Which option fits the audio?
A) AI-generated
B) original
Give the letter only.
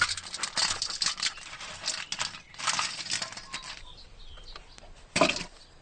B